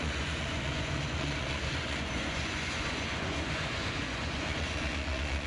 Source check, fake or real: fake